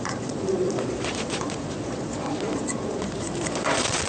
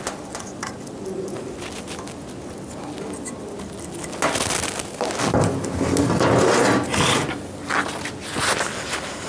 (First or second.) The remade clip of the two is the first